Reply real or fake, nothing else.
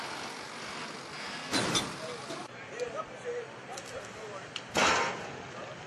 real